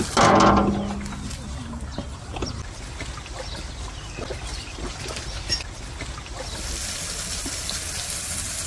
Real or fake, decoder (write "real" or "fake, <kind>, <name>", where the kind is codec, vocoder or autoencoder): real